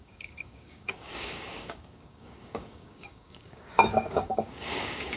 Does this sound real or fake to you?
fake